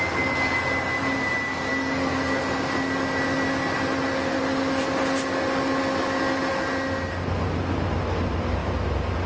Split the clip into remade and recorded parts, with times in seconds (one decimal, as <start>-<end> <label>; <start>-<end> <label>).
0.0-1.7 recorded; 1.7-2.4 remade; 2.4-9.3 recorded